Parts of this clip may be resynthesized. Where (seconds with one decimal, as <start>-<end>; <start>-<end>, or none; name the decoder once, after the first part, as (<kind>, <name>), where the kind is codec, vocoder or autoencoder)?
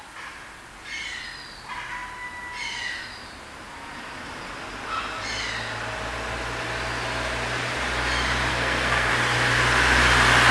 8.5-9.1 (codec, SNAC)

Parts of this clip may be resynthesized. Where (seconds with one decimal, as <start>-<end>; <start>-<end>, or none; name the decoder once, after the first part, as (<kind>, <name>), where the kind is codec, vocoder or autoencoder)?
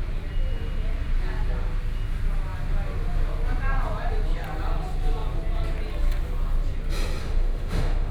7.2-8.1 (autoencoder, DAC-VAE)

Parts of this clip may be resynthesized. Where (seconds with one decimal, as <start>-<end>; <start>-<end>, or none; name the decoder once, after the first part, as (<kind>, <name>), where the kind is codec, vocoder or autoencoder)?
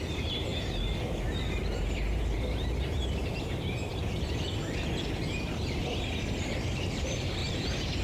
0.0-3.9 (vocoder, BigVGAN v2); 6.7-8.0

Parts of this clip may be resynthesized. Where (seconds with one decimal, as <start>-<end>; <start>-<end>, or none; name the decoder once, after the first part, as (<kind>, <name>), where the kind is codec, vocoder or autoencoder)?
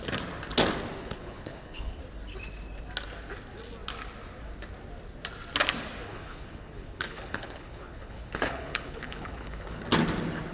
1.0-2.0 (codec, HILCodec); 6.1-9.8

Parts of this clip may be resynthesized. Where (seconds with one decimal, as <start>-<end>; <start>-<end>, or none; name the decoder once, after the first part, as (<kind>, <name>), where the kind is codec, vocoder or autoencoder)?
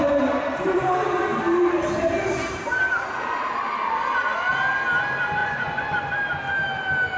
5.4-6.1 (vocoder, Vocos)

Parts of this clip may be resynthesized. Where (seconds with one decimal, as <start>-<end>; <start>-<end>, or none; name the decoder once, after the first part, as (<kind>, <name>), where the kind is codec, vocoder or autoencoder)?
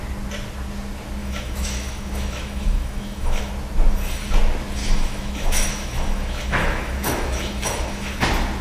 1.2-3.5 (autoencoder, DAC-VAE); 4.8-8.2